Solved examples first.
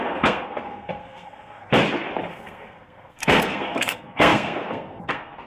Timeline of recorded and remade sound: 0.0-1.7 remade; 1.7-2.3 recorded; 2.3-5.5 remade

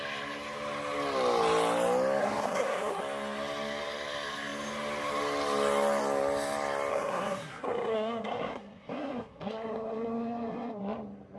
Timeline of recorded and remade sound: 0.0-2.2 recorded; 2.2-3.0 remade; 3.0-6.9 recorded; 6.9-10.8 remade; 10.8-11.4 recorded